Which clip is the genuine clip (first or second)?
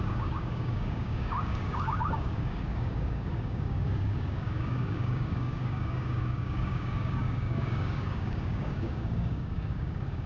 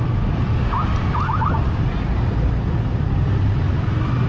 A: second